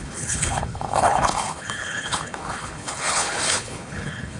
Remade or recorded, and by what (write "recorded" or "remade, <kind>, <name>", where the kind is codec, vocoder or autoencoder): remade, codec, HILCodec